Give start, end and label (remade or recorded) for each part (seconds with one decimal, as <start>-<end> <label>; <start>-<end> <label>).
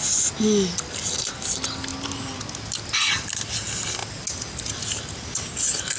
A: 0.0-6.0 recorded